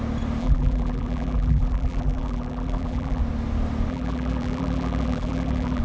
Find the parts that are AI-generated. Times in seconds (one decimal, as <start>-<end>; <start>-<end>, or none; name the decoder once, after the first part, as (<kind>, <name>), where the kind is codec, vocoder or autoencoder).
0.4-3.2 (vocoder, BigVGAN v2); 3.9-5.8